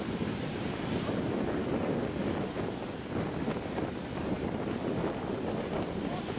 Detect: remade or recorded recorded